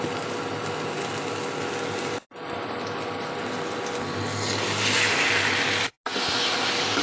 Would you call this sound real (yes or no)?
yes